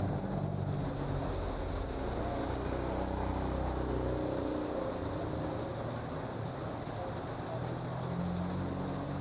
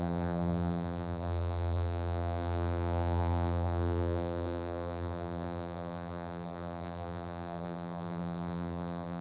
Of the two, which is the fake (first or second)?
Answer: second